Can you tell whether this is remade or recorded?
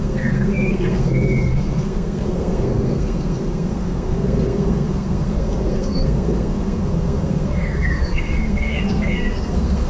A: remade